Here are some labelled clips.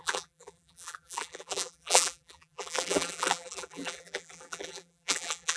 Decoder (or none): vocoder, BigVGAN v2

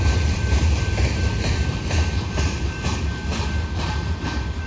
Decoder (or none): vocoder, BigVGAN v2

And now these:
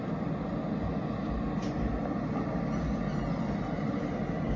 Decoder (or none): none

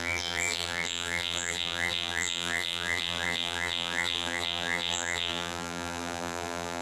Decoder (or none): vocoder, BigVGAN v2